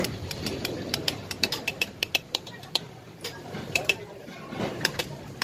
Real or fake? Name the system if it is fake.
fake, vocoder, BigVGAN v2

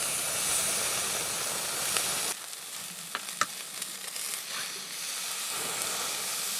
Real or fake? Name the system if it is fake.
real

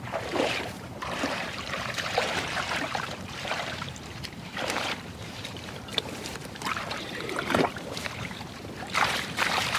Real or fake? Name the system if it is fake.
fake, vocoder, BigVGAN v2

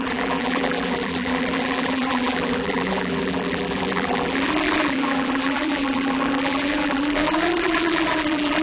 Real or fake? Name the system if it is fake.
fake, vocoder, BigVGAN v2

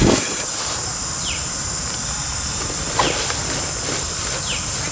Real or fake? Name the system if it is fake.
real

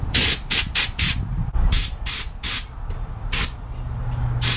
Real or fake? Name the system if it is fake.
real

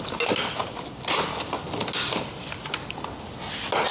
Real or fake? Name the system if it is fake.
real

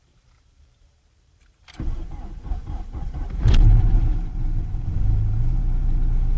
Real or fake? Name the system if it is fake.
fake, vocoder, BigVGAN v2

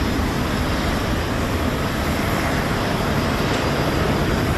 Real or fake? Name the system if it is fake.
fake, vocoder, BigVGAN v2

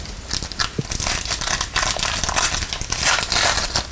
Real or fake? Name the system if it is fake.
real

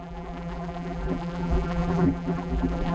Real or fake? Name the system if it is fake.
fake, vocoder, BigVGAN v2